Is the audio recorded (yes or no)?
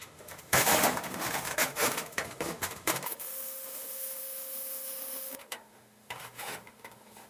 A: no